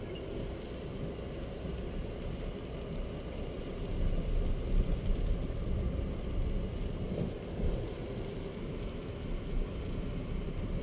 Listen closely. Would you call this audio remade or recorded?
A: recorded